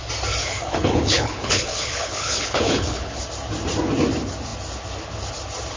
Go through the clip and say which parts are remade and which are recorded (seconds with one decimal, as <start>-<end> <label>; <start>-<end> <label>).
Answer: 0.0-0.4 recorded; 0.4-3.2 remade; 3.2-5.8 recorded